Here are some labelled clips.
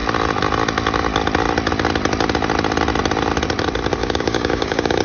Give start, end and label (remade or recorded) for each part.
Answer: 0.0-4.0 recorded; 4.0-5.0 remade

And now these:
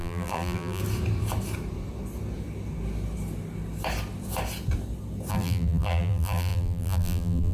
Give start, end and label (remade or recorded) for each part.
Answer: 0.0-0.8 remade; 0.8-5.3 recorded; 5.3-7.5 remade

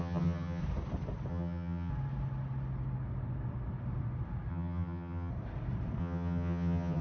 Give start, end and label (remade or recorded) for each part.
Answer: 0.0-0.6 remade; 0.6-1.3 recorded; 1.3-1.9 remade; 1.9-4.5 recorded; 4.5-5.3 remade; 5.3-6.0 recorded; 6.0-7.0 remade

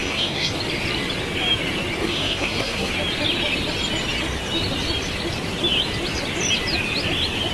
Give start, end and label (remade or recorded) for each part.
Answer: 0.0-0.5 remade; 0.5-2.0 recorded; 2.0-2.9 remade; 2.9-7.5 recorded

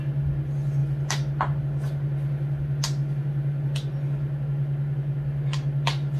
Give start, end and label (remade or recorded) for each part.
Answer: 0.0-6.2 recorded

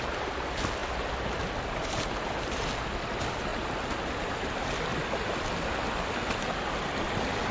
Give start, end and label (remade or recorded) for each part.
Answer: 0.0-7.5 recorded

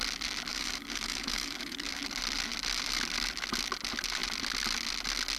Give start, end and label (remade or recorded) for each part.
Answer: 0.0-0.5 recorded; 0.5-2.0 remade; 2.0-5.4 recorded